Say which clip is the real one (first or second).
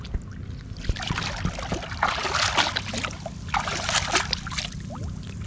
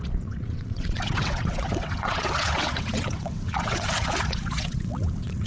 first